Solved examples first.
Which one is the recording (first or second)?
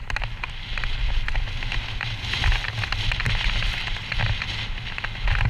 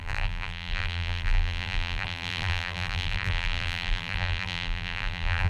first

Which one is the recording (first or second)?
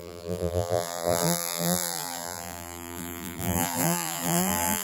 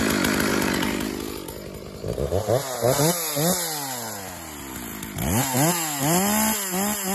second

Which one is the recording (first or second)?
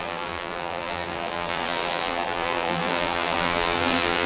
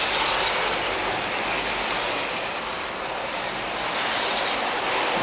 second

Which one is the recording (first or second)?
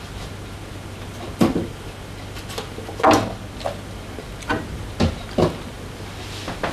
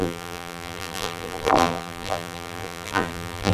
first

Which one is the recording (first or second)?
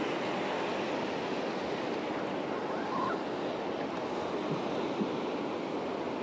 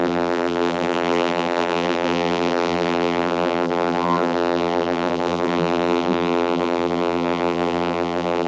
first